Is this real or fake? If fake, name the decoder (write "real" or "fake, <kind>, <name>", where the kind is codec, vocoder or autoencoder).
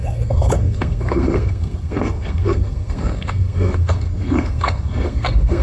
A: fake, codec, SNAC